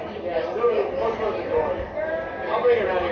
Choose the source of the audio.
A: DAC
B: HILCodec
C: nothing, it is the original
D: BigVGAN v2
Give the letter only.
C